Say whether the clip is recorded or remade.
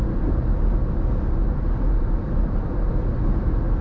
recorded